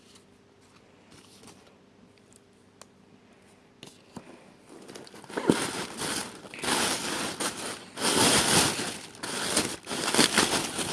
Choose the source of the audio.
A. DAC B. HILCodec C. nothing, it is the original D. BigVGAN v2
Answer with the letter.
C